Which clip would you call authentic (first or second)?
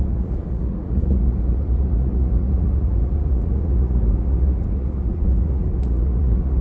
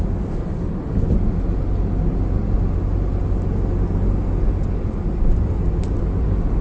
second